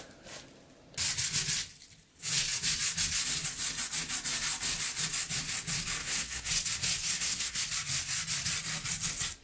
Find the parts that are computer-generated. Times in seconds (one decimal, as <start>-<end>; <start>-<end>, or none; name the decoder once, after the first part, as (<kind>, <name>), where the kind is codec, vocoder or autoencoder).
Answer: 6.0-6.5 (codec, SNAC); 7.1-7.6